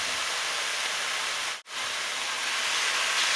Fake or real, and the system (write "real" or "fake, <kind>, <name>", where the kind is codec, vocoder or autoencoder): real